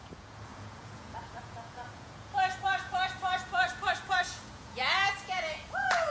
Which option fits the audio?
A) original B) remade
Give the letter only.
B